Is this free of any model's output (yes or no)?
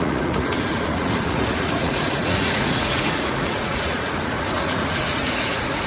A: no